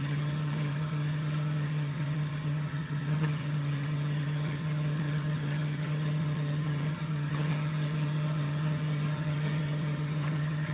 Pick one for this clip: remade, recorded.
remade